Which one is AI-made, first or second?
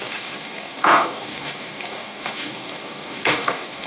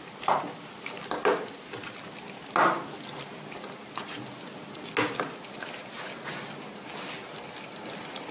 first